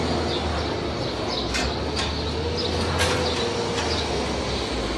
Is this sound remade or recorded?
recorded